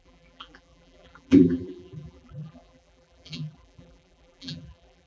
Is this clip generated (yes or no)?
yes